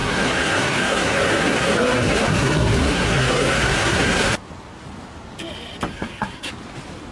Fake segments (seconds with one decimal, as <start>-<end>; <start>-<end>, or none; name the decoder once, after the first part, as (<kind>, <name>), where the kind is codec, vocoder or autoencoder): 0.0-4.3 (codec, SNAC); 5.9-6.5